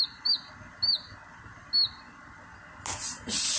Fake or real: real